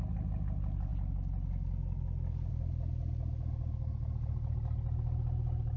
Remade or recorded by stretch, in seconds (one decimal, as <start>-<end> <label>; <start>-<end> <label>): 0.0-5.8 recorded